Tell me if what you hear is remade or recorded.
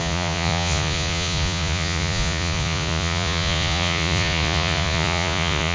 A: remade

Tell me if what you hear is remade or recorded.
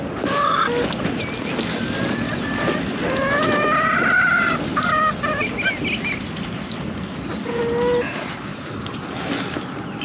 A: recorded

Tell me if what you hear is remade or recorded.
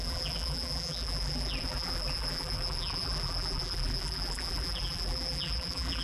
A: remade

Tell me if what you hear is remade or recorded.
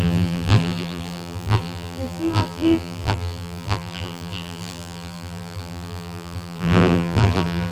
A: remade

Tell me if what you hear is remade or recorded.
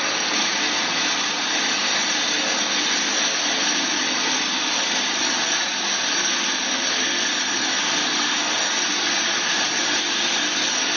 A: recorded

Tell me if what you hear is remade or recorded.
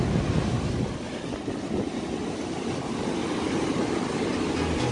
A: recorded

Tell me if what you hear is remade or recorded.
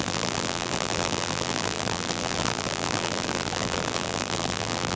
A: remade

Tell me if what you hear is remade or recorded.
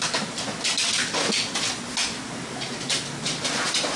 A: recorded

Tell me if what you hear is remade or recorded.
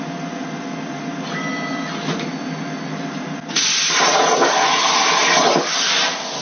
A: recorded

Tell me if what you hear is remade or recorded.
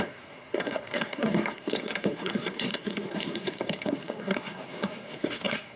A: remade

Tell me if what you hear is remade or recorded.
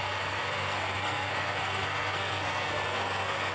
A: remade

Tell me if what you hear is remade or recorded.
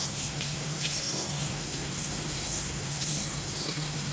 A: remade